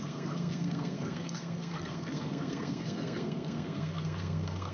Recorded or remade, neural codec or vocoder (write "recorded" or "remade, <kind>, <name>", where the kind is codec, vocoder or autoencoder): remade, codec, SNAC